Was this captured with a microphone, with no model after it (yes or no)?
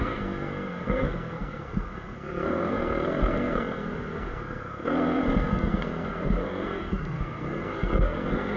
no